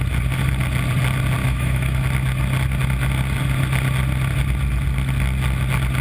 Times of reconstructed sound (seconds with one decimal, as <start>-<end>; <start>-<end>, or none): 1.4-2.0